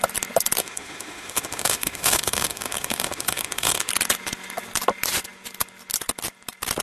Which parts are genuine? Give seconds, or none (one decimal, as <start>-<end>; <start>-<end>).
0.0-0.6; 3.9-6.8